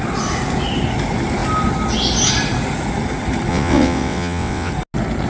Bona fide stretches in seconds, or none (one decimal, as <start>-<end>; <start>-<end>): 0.0-3.5; 4.7-5.3